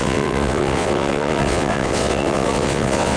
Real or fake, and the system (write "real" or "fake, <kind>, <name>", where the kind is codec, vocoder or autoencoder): fake, vocoder, WaveNeXt